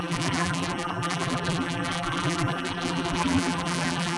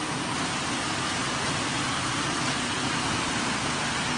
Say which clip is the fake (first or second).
first